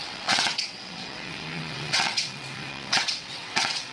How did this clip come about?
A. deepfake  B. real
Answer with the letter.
A